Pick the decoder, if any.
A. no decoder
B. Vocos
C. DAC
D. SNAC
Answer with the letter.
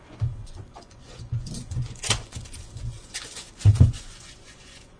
B